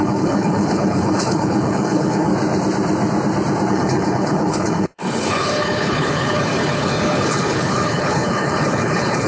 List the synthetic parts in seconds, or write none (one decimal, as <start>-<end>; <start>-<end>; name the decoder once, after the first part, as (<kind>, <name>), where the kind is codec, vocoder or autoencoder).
0.0-2.3 (codec, HILCodec); 3.7-9.3